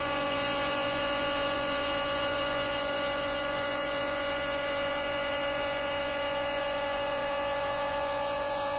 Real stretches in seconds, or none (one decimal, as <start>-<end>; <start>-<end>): none